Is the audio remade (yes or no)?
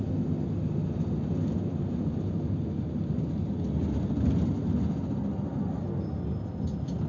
no